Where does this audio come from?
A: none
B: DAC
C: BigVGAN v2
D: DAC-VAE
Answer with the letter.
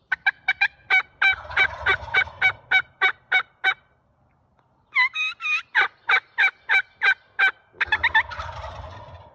A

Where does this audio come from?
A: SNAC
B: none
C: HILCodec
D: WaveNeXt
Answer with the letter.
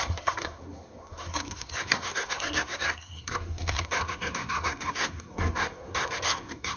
A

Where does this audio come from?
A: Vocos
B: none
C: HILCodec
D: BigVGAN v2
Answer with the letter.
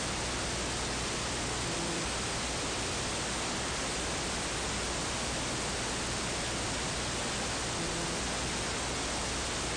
B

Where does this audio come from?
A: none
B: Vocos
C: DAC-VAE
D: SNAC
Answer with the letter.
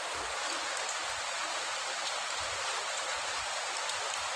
A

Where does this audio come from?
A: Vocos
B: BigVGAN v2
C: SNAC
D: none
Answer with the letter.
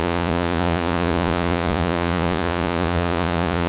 A